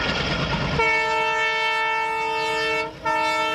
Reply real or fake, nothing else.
real